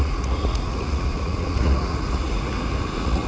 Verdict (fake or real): fake